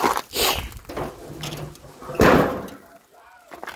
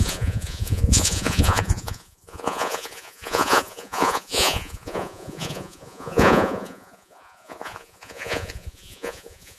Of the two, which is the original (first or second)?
first